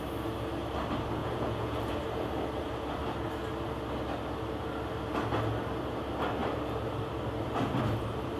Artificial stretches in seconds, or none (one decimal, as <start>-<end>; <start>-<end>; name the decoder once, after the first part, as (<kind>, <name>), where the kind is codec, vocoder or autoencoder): 1.2-1.8 (vocoder, Vocos)